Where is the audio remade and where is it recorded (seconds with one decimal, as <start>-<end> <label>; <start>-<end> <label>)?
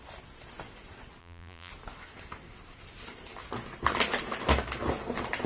0.0-1.2 recorded; 1.2-1.7 remade; 1.7-5.5 recorded